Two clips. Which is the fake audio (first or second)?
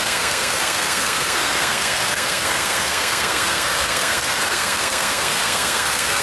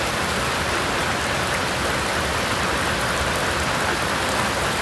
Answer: first